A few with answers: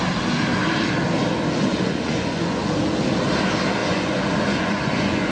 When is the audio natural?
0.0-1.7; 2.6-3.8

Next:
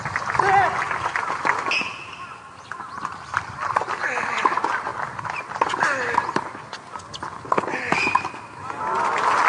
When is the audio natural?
0.0-9.5

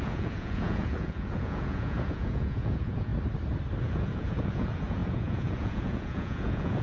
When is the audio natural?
3.1-3.8

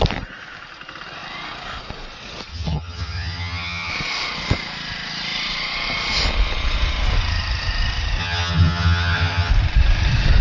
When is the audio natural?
0.0-2.5; 3.9-8.2; 9.5-10.4

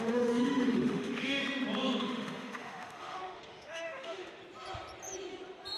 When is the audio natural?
1.4-2.0; 4.4-5.8

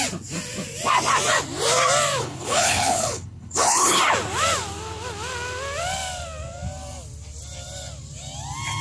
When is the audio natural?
0.0-2.2; 4.0-8.8

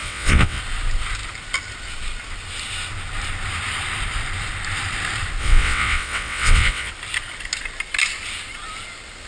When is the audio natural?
0.6-5.4; 6.9-9.3

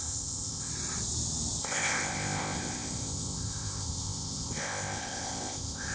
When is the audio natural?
0.7-1.6